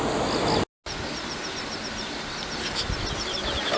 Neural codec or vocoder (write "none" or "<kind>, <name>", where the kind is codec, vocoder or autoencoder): none